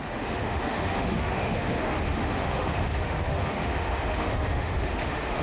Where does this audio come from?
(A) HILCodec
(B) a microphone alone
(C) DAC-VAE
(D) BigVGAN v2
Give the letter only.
C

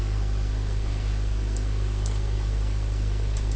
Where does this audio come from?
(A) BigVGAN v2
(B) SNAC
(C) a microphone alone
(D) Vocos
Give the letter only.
B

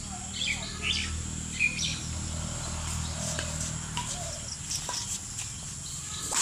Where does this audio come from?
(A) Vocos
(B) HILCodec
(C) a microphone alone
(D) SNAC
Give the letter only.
C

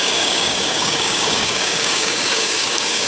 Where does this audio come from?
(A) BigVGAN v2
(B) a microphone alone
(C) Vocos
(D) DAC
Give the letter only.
D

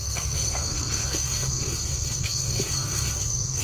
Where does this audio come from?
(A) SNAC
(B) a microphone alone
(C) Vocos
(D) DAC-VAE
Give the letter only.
A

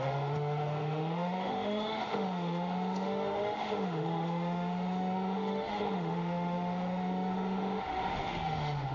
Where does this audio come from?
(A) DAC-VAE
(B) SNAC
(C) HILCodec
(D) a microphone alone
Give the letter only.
A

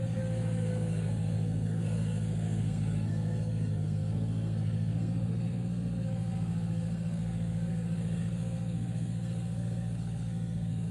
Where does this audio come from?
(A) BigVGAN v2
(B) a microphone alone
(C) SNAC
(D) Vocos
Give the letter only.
C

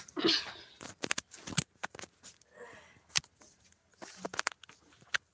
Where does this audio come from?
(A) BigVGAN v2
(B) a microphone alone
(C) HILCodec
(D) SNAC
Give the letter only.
B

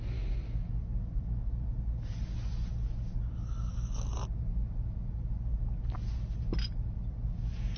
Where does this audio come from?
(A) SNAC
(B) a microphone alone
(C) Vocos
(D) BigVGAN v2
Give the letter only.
B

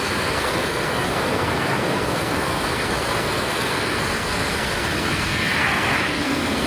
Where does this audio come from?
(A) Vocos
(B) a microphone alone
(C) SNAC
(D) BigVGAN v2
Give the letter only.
C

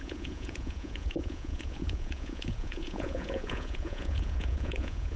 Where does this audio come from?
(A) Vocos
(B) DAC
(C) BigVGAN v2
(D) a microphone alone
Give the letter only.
A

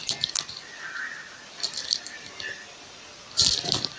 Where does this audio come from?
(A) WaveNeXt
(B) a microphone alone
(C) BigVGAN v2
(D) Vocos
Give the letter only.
B